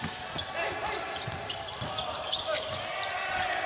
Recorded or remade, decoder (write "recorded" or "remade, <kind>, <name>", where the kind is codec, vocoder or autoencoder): recorded